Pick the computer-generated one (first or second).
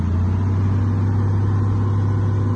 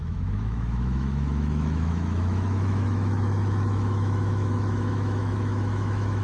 second